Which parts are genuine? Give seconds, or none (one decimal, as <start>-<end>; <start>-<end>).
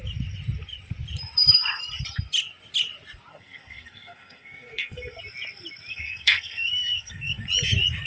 0.0-3.3; 5.2-5.9; 7.4-8.1